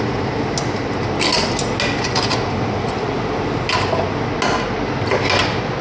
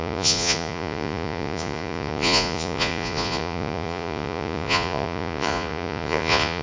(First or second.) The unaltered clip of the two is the first